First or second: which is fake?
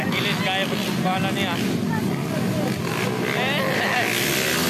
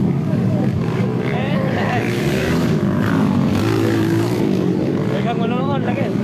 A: second